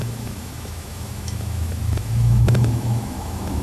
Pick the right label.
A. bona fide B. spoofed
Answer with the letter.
B